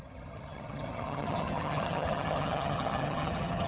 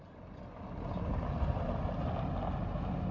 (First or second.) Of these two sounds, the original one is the second